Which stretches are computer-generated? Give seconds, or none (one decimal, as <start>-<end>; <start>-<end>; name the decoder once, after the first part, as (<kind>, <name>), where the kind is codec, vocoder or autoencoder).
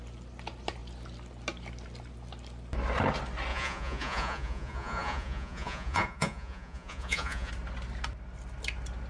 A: 3.5-7.5 (vocoder, Vocos)